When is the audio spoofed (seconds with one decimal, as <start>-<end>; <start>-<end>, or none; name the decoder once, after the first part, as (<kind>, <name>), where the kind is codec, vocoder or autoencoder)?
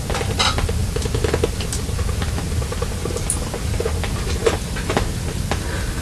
none